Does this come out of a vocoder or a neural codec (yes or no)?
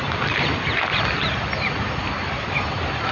no